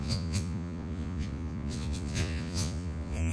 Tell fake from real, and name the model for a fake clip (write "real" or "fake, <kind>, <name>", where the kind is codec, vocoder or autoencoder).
fake, vocoder, Vocos